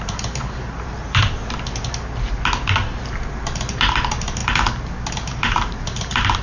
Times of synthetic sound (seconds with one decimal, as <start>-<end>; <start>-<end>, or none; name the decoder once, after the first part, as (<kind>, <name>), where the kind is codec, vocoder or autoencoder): 0.0-1.4 (vocoder, BigVGAN v2); 3.1-4.4; 5.1-6.4